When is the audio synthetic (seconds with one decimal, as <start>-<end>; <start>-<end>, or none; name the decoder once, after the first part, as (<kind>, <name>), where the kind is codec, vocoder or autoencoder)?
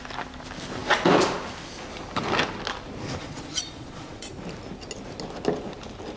3.2-4.3 (vocoder, Vocos)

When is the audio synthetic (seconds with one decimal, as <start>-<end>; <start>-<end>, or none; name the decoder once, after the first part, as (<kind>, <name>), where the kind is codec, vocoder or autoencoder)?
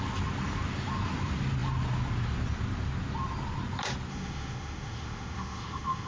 4.1-6.1 (autoencoder, DAC-VAE)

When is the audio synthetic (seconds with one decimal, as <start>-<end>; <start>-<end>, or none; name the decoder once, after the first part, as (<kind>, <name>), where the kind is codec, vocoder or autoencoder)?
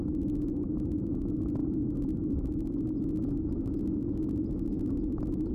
none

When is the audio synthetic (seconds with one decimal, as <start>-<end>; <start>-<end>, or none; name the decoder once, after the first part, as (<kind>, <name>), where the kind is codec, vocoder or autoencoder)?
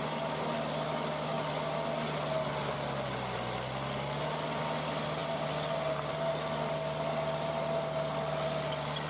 none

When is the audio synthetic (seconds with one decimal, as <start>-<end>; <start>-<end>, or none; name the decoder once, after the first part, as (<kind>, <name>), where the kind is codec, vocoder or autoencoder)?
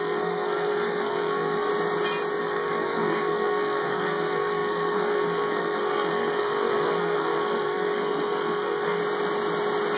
0.0-1.7 (codec, SNAC); 2.4-9.0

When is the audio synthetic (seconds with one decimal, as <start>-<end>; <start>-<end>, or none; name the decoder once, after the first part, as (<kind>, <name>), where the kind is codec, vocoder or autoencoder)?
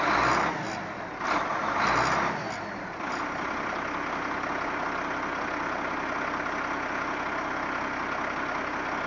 none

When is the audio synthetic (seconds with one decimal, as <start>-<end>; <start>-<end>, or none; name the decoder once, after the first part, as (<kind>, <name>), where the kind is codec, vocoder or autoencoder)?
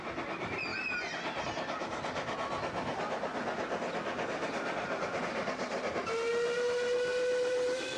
none